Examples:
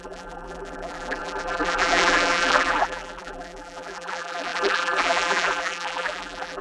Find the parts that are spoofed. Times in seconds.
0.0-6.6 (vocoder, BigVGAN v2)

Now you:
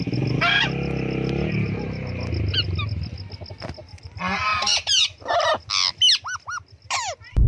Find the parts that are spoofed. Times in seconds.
none

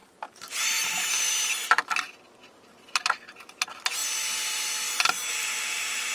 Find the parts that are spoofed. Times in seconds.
0.0-1.3 (vocoder, BigVGAN v2); 4.0-4.9; 5.4-6.1

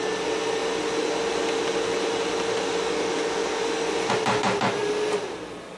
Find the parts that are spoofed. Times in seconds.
none

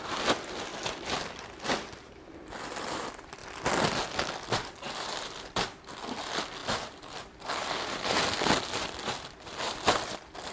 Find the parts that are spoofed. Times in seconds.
0.0-0.7 (vocoder, BigVGAN v2); 2.2-3.4; 4.2-10.5